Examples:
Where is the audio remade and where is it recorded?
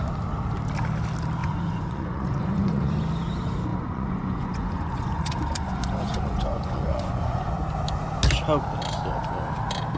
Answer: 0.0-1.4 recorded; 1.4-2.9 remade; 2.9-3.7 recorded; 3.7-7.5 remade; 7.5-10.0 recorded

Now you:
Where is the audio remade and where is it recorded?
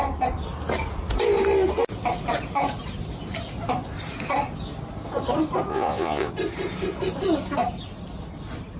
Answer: 0.0-5.7 recorded; 5.7-6.3 remade; 6.3-8.8 recorded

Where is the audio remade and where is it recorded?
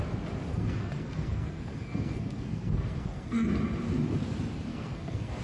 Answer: 0.0-0.5 recorded; 0.5-3.5 remade; 3.5-4.7 recorded; 4.7-5.4 remade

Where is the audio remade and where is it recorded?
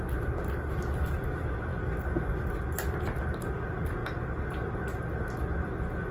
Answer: 0.0-6.1 recorded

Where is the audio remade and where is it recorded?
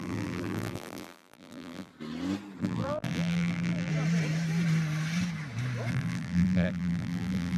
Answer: 0.0-1.9 remade; 1.9-2.6 recorded; 2.6-3.9 remade; 3.9-5.9 recorded; 5.9-7.6 remade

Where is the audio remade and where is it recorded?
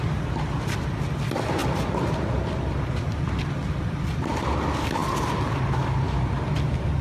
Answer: 0.0-7.0 recorded